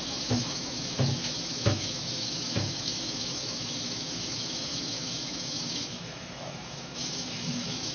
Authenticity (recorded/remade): remade